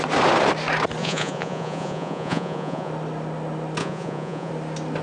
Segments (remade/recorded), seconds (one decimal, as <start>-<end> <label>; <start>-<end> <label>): 0.0-1.0 recorded; 1.0-2.9 remade; 2.9-3.8 recorded; 3.8-4.5 remade; 4.5-5.0 recorded